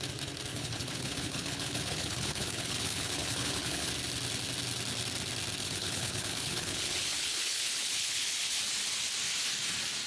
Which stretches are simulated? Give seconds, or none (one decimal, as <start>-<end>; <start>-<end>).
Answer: 0.5-3.9; 5.6-8.6